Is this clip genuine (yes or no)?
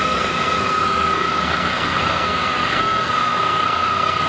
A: no